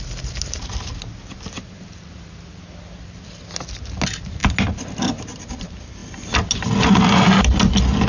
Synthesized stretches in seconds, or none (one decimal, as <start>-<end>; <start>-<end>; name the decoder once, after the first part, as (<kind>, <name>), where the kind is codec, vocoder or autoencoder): none